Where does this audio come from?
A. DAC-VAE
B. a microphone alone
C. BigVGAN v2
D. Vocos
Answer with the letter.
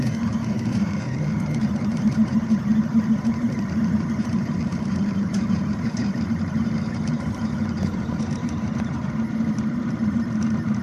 C